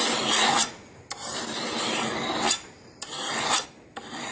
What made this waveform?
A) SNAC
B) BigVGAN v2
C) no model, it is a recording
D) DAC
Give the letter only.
C